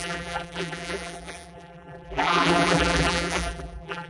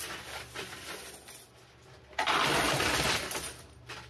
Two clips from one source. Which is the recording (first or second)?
second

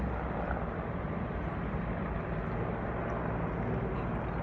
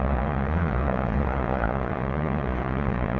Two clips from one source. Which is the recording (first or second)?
first